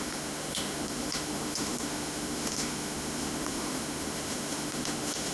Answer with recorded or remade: remade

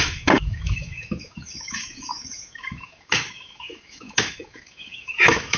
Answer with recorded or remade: remade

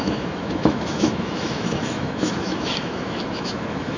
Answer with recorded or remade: remade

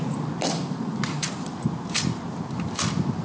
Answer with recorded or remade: recorded